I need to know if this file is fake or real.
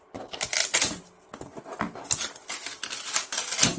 real